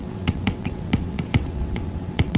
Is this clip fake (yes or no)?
yes